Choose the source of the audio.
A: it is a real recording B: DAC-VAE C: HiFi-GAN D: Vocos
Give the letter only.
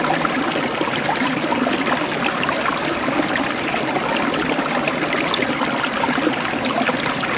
A